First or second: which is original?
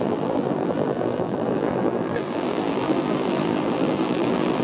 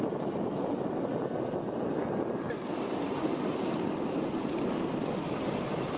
second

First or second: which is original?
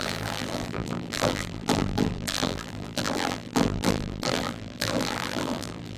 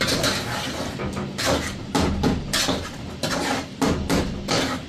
second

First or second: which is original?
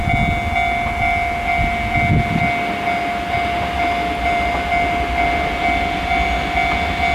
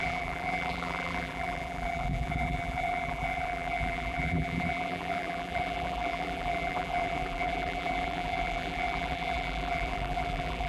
first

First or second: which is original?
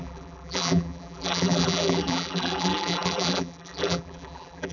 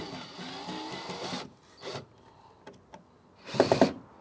second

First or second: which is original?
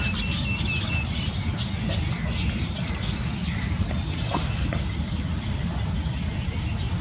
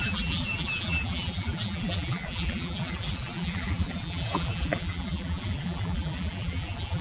first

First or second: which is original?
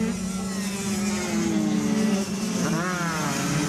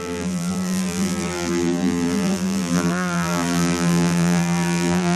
first